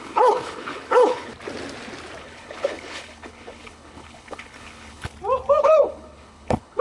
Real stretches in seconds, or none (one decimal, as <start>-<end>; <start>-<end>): 1.3-2.2; 5.1-5.6